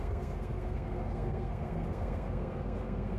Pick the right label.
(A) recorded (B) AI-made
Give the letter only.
B